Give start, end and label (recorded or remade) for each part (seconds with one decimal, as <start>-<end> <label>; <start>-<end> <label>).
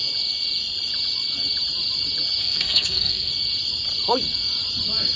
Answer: 0.0-2.4 recorded; 2.4-3.3 remade; 3.3-5.2 recorded